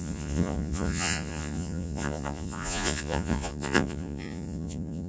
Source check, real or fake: fake